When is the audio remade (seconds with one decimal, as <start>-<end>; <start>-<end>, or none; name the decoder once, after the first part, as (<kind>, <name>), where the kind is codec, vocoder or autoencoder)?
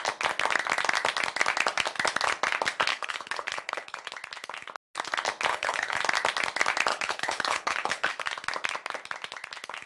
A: 2.9-4.1 (codec, HILCodec); 5.5-6.0; 6.9-8.1